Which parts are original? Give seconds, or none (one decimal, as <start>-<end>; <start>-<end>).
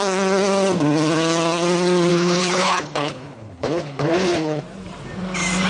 0.0-2.1; 4.6-5.7